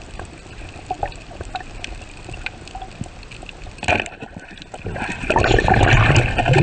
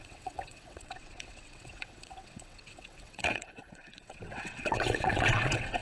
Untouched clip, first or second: first